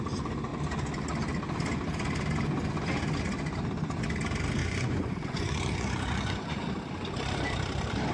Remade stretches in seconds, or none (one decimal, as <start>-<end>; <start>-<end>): 4.6-6.6